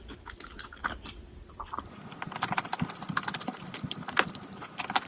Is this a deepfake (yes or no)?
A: no